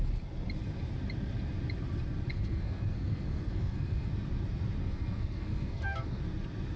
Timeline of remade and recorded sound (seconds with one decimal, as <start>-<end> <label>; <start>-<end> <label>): 0.0-2.3 recorded; 2.3-4.1 remade; 4.1-4.8 recorded; 4.8-6.2 remade; 6.2-6.8 recorded